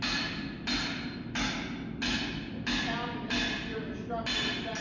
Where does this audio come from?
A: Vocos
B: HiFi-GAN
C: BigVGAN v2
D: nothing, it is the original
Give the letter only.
D